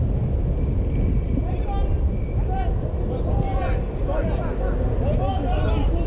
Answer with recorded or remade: recorded